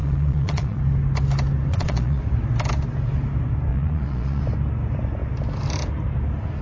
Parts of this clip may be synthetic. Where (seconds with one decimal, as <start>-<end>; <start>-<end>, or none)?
0.0-0.8; 1.7-2.2; 3.7-4.4